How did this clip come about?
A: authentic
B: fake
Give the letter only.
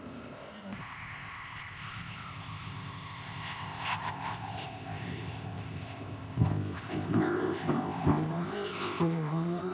B